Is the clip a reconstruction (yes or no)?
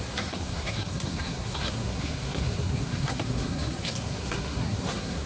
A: yes